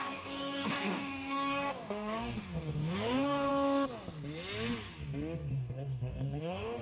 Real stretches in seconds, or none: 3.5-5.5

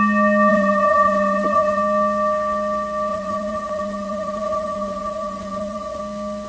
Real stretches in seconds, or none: 0.0-0.5; 1.8-3.1; 6.0-6.5

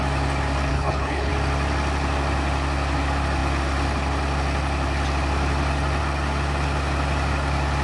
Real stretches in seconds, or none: 0.0-0.7; 1.3-7.8

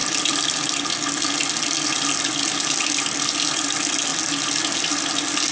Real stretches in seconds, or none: 0.0-5.5

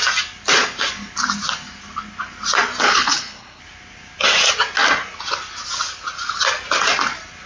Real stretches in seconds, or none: 0.0-2.8; 3.6-7.5